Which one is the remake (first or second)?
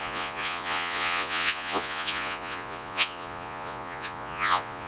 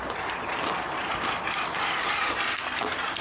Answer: first